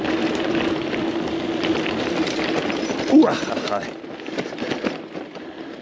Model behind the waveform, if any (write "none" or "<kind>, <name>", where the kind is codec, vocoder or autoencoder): none